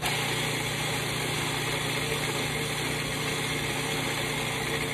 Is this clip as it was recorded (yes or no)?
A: yes